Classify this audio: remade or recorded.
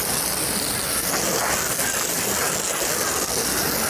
recorded